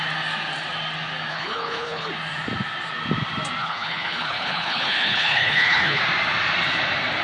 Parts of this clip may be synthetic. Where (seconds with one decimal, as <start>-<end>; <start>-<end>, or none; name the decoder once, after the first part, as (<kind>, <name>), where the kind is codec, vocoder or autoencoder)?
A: 1.3-2.1 (codec, HILCodec); 3.6-6.0